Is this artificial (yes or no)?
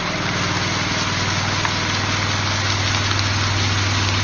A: no